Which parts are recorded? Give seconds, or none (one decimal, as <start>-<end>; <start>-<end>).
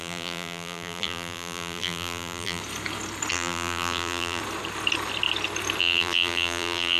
2.6-3.3; 4.4-5.8